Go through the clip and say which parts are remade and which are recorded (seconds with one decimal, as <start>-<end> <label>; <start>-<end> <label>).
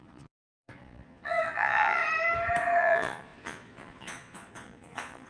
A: 0.0-2.0 remade; 2.0-2.8 recorded; 2.8-5.3 remade